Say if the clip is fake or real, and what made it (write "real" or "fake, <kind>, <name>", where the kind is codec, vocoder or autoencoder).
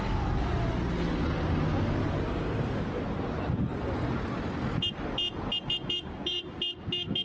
real